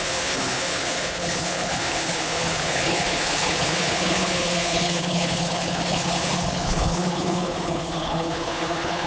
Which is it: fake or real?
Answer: fake